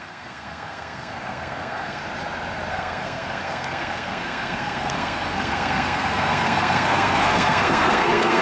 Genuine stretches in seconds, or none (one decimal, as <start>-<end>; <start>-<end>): 2.0-2.7

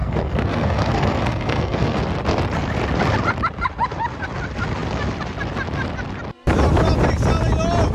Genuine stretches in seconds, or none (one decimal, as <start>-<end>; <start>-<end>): 2.0-7.9

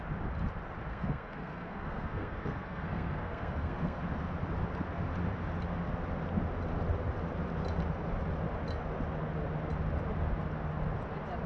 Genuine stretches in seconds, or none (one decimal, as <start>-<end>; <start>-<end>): 0.0-0.9; 4.0-11.5